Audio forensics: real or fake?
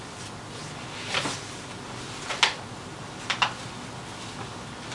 real